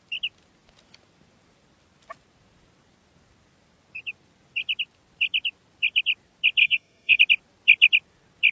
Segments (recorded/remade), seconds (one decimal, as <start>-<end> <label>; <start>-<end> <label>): 0.0-6.6 recorded; 6.6-7.2 remade; 7.2-8.5 recorded